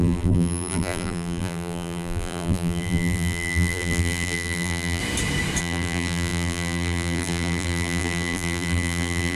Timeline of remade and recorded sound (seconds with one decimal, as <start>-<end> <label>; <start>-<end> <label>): 0.0-5.0 remade; 5.0-5.6 recorded; 5.6-9.3 remade